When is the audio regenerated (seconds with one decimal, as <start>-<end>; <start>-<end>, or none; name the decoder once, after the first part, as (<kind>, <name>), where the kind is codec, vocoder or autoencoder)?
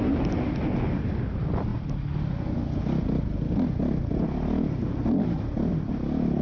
none